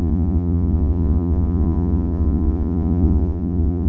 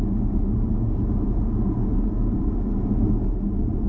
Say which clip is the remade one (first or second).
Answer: first